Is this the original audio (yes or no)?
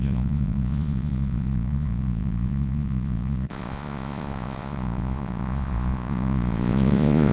no